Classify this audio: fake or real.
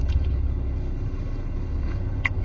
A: fake